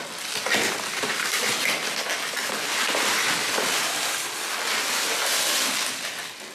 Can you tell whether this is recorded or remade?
recorded